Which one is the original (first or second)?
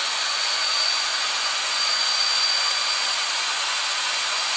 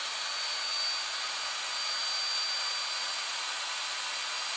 second